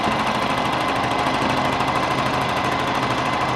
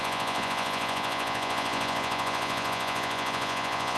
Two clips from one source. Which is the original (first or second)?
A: first